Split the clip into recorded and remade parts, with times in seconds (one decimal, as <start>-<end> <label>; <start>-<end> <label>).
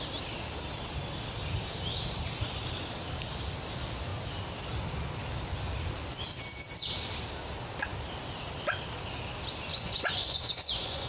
0.0-9.7 recorded; 9.7-11.1 remade